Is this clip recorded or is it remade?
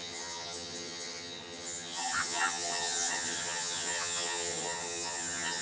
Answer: remade